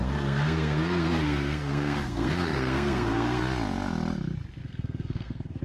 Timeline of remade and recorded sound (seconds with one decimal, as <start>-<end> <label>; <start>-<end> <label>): 0.0-3.4 remade; 3.4-4.6 recorded; 4.6-5.6 remade